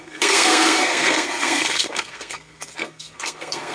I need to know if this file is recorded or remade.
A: remade